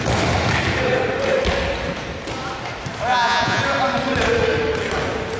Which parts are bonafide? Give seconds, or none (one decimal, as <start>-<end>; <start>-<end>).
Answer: 0.0-3.1; 3.6-5.4